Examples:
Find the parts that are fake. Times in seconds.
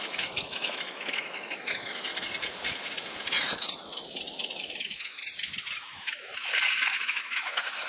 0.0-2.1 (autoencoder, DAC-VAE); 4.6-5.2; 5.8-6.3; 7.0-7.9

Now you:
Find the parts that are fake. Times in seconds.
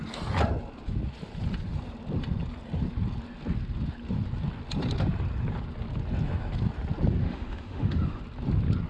7.2-8.2 (autoencoder, DAC-VAE)